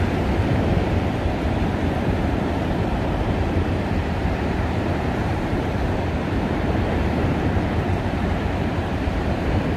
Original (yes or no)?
no